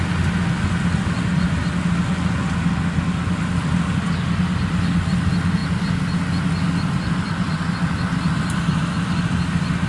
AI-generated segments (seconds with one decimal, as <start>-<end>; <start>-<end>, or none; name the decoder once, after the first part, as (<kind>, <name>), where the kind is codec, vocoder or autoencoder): none